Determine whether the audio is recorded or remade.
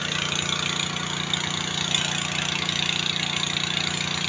recorded